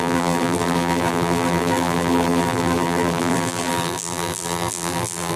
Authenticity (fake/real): fake